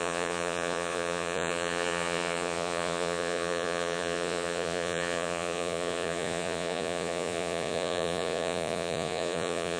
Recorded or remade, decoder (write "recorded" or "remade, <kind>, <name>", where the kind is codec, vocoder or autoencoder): remade, vocoder, Vocos